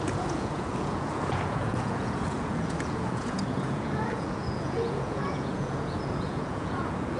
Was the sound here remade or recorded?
remade